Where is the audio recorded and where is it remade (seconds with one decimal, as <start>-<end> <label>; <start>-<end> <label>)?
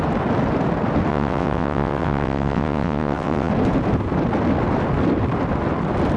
0.0-1.1 recorded; 1.1-3.5 remade; 3.5-6.2 recorded